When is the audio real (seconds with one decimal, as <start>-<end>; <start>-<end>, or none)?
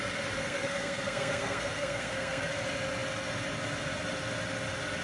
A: 0.0-0.4; 2.5-5.0